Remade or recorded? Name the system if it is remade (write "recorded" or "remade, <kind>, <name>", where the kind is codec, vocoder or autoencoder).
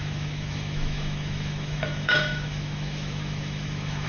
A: remade, autoencoder, DAC-VAE